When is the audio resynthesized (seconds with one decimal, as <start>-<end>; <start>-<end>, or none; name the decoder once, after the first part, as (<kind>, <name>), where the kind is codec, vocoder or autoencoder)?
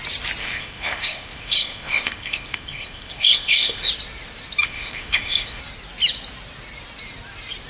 0.4-3.9 (codec, ZipCodec); 4.6-5.6